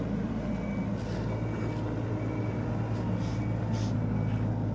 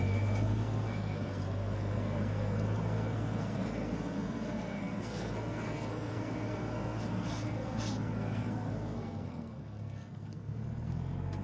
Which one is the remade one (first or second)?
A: second